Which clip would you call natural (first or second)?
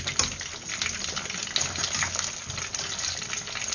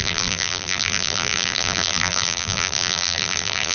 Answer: first